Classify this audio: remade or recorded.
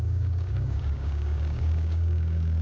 remade